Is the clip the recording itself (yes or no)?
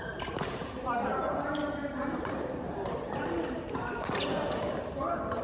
no